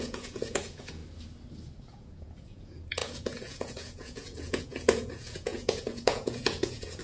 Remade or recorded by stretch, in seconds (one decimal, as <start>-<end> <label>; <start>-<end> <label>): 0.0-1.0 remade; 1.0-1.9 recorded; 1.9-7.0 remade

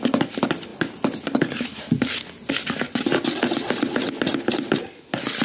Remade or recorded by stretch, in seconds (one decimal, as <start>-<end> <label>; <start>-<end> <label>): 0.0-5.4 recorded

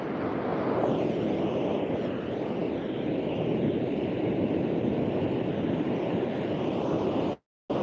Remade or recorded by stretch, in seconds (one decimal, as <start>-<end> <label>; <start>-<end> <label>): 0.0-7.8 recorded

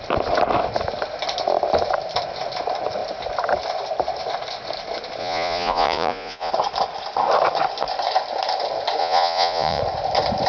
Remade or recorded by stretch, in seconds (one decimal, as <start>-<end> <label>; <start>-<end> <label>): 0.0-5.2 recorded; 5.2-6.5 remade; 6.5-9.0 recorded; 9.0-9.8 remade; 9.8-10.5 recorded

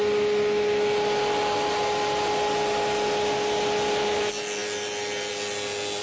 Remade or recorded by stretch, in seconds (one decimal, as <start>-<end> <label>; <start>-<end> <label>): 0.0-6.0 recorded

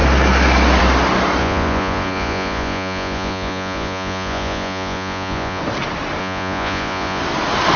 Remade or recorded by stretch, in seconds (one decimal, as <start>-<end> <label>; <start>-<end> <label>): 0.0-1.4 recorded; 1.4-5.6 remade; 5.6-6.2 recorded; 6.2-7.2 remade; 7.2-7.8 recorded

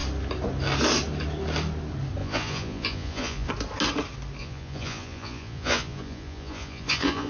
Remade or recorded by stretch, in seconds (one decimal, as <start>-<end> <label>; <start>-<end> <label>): 0.0-2.2 recorded; 2.2-3.5 remade; 3.5-4.4 recorded; 4.4-7.3 remade